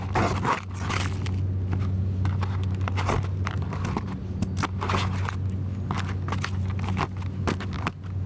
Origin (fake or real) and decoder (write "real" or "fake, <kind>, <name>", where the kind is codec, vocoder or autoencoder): real